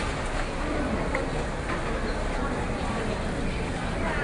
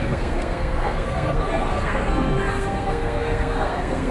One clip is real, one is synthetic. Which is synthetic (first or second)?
second